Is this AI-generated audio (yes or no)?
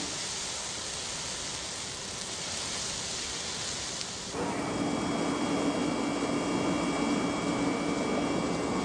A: no